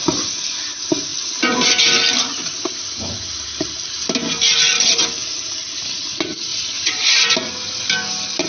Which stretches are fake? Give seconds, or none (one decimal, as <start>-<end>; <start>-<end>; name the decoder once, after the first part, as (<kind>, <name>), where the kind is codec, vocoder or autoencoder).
6.5-7.1 (vocoder, Vocos)